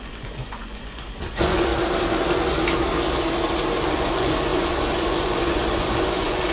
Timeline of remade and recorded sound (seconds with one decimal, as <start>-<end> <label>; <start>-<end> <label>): 0.0-1.7 remade; 1.7-3.9 recorded; 3.9-6.5 remade